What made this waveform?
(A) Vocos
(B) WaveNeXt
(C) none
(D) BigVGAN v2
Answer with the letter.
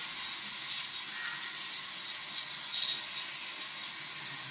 C